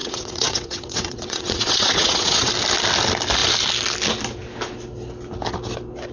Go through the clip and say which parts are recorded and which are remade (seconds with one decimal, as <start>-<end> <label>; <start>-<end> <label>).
0.0-2.5 remade; 2.5-6.1 recorded